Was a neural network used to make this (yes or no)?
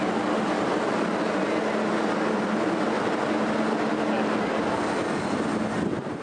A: no